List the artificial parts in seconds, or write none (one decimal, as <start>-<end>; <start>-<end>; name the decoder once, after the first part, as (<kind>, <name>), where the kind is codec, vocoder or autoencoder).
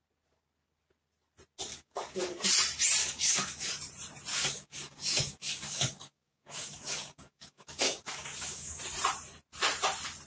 1.7-2.5 (codec, DAC); 3.0-3.7; 4.3-8.8